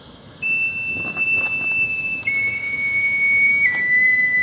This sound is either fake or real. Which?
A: fake